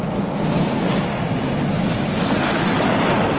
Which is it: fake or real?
real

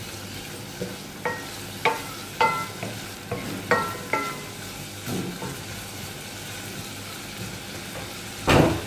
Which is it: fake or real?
real